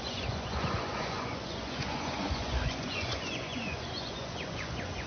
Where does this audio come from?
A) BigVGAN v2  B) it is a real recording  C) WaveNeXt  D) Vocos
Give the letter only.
D